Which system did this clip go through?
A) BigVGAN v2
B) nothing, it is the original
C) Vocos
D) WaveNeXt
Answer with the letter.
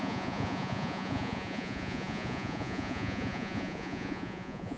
C